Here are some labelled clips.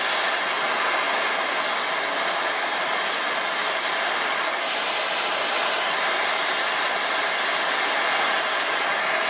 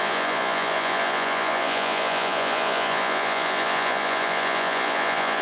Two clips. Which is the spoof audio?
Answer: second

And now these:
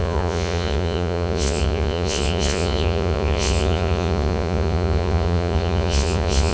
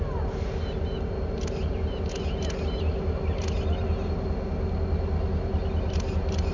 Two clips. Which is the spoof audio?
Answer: first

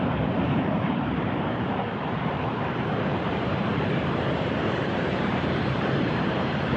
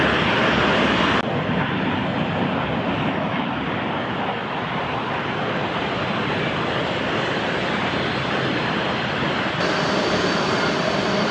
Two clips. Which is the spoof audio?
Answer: first